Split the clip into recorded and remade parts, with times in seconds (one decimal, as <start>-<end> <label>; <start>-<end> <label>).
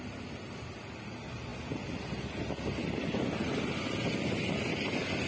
0.0-5.3 recorded